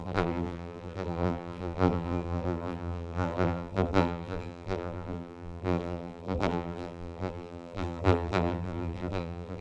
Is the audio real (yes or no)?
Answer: no